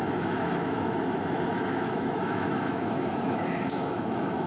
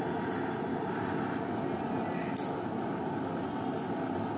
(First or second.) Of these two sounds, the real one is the second